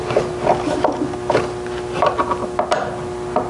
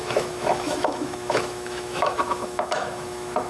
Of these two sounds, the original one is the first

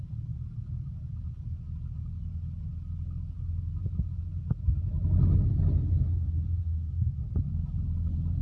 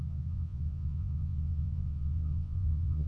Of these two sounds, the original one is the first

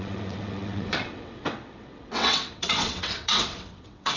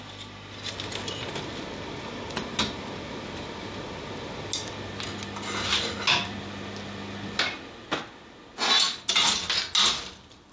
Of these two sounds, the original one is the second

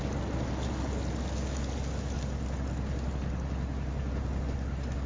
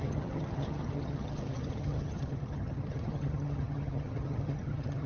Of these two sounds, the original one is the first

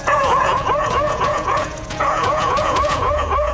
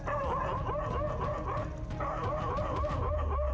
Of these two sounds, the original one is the second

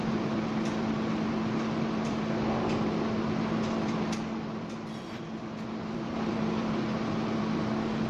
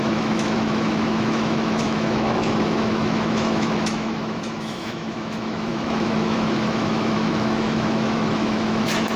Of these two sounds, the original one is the first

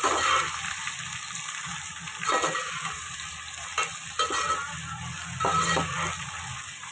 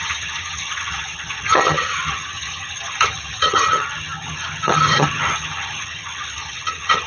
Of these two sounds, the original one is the first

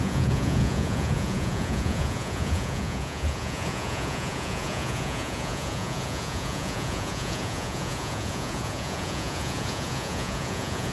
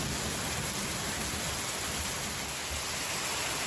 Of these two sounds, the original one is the second